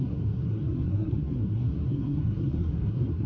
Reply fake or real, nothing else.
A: fake